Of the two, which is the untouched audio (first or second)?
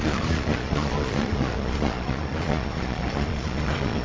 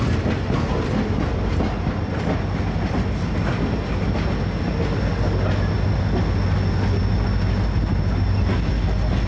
second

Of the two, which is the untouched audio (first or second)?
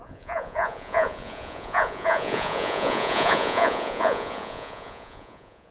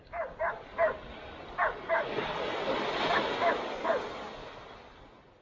second